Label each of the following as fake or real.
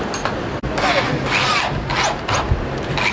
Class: real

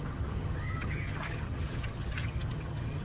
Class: fake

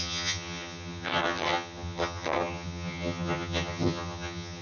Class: fake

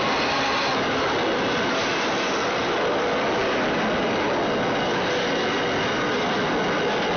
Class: real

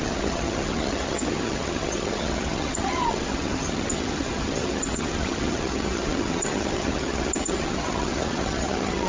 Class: fake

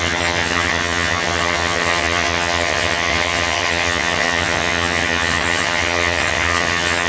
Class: fake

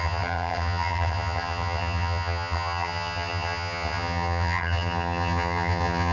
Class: fake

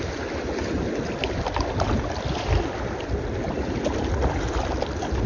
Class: real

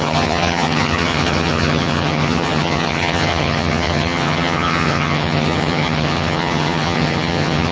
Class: fake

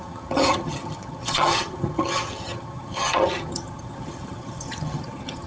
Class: fake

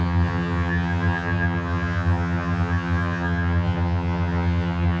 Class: fake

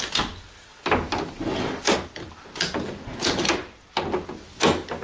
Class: real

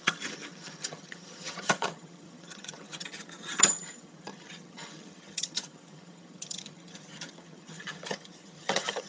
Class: fake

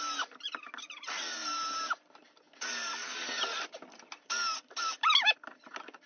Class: real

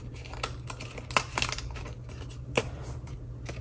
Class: real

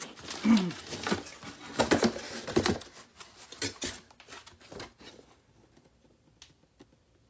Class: real